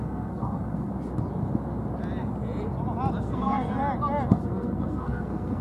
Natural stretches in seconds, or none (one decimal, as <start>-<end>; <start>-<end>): 0.9-3.2; 3.7-4.3